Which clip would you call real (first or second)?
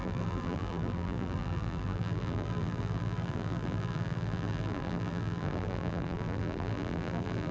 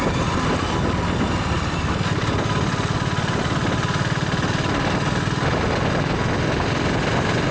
second